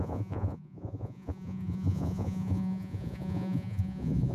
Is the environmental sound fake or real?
fake